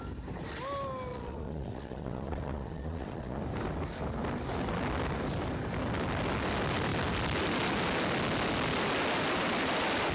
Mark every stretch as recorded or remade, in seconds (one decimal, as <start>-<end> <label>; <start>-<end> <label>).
0.0-1.1 recorded; 1.1-3.4 remade; 3.4-10.1 recorded